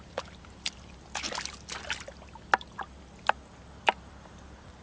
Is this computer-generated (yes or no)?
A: no